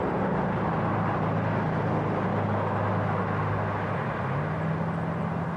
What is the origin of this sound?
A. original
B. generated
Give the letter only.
A